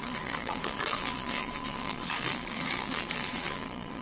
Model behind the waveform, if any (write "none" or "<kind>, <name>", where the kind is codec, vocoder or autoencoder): vocoder, Vocos